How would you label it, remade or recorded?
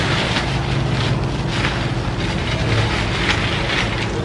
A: recorded